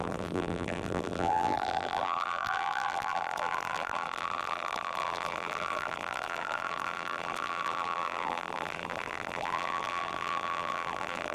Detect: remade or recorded remade